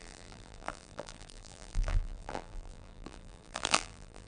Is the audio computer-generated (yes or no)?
yes